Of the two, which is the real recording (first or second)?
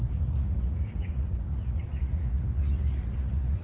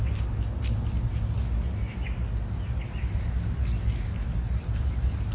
second